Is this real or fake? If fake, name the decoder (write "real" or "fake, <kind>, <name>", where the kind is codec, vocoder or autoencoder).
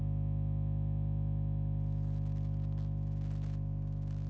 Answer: real